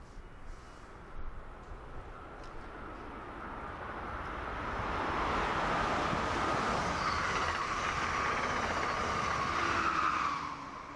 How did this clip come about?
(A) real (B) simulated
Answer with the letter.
A